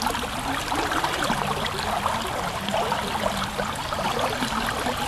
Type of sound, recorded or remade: recorded